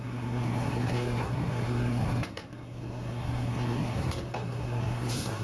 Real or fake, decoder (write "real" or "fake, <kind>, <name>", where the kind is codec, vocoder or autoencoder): fake, codec, SNAC